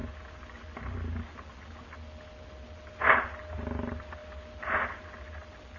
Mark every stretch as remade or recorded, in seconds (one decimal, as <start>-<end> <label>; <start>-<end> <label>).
0.0-5.8 recorded